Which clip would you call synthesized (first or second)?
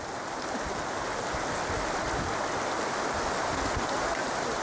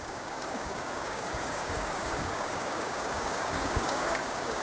second